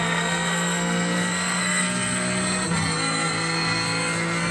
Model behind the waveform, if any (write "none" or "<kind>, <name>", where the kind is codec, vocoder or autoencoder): codec, SNAC